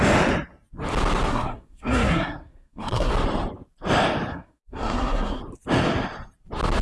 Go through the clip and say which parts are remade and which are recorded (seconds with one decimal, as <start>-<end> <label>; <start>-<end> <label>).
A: 0.0-1.3 recorded; 1.3-3.1 remade; 3.1-4.3 recorded; 4.3-5.4 remade; 5.4-6.8 recorded